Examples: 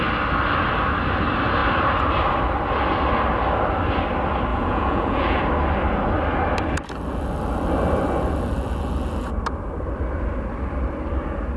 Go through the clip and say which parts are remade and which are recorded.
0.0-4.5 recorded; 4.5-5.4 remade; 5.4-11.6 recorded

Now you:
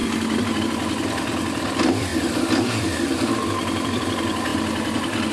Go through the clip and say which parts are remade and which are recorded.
0.0-0.6 recorded; 0.6-2.1 remade; 2.1-2.6 recorded; 2.6-5.3 remade

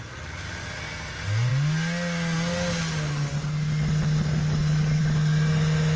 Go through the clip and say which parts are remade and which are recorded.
0.0-6.0 recorded

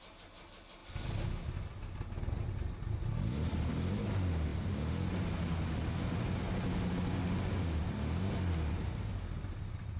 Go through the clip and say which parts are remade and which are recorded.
0.0-10.0 recorded

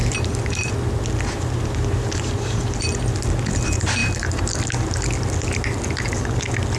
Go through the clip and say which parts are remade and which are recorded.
0.0-0.7 remade; 0.7-4.0 recorded; 4.0-4.6 remade; 4.6-6.8 recorded